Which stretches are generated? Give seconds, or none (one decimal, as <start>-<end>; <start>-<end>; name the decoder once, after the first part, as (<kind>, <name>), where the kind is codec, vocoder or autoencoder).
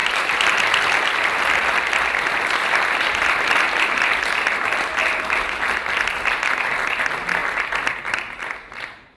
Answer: none